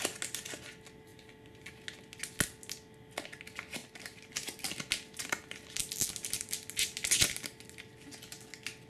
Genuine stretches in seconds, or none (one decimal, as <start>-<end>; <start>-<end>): 0.0-8.9